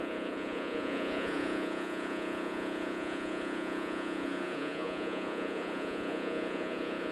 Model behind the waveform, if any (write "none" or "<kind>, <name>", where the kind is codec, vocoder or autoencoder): vocoder, Vocos